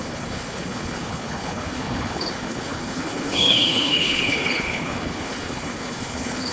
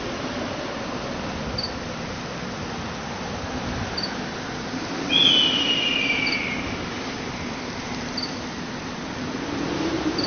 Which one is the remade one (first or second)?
first